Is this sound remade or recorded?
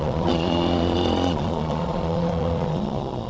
remade